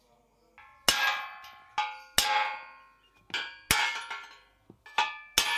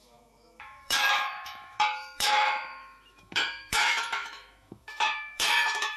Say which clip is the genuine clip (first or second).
first